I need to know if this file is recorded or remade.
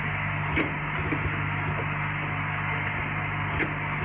recorded